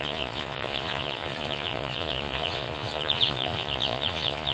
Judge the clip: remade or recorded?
remade